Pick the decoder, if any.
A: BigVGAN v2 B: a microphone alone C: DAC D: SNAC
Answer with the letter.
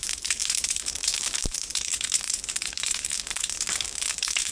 C